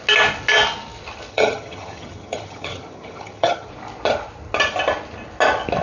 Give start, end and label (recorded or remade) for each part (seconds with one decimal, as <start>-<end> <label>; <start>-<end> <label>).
0.0-1.3 recorded; 1.3-3.7 remade; 3.7-5.8 recorded